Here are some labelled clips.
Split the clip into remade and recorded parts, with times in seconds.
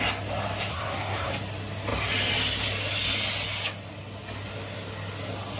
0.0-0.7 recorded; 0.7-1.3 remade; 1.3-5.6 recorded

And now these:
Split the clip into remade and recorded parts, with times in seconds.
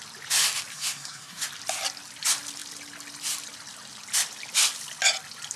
0.0-0.7 recorded; 0.7-1.4 remade; 1.4-5.6 recorded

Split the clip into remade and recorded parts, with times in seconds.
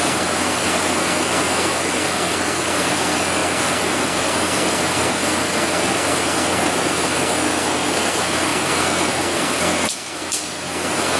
0.0-11.2 remade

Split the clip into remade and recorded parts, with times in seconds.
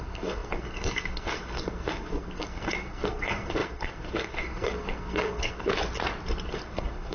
0.0-5.7 remade; 5.7-6.5 recorded; 6.5-7.1 remade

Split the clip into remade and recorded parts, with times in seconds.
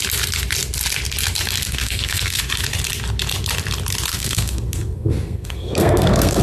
0.0-1.6 recorded; 1.6-2.4 remade; 2.4-4.1 recorded; 4.1-6.4 remade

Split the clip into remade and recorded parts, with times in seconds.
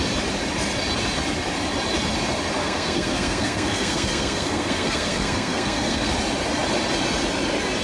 0.0-2.6 recorded; 2.6-6.1 remade; 6.1-7.8 recorded